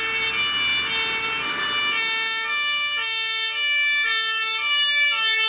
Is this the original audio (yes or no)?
yes